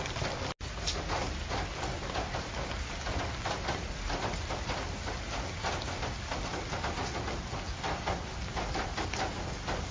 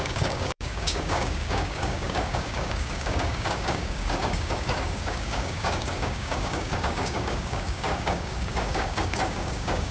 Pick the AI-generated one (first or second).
second